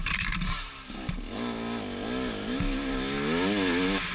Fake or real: real